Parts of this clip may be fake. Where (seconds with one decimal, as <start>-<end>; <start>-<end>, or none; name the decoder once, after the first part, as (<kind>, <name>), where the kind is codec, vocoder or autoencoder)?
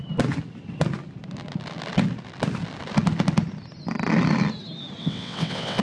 5.0-5.8 (vocoder, WaveNeXt)